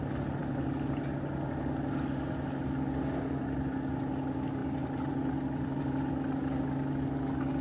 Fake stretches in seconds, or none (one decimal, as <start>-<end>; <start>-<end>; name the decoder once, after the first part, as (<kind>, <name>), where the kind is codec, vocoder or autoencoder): 4.6-6.0 (vocoder, BigVGAN v2)